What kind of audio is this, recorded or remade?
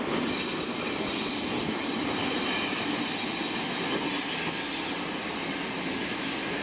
recorded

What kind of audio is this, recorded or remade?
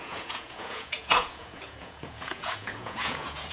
remade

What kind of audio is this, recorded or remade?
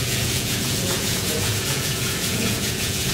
remade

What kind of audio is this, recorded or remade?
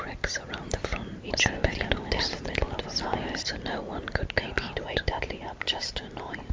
recorded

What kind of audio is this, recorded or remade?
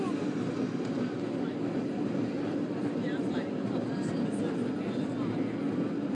recorded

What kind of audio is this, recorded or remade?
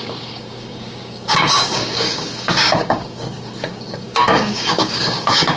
remade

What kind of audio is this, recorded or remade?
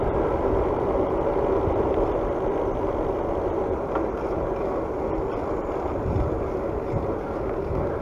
recorded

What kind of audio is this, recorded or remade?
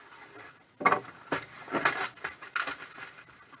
recorded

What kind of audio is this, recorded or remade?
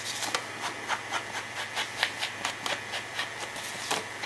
recorded